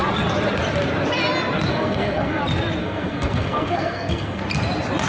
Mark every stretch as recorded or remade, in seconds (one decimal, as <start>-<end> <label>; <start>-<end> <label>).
0.0-1.7 recorded; 1.7-2.4 remade; 2.4-2.8 recorded; 2.8-4.4 remade; 4.4-5.1 recorded